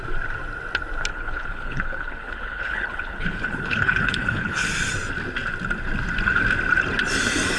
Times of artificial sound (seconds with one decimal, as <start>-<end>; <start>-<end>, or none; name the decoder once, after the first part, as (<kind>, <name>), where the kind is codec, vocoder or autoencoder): 1.1-4.7 (codec, HILCodec)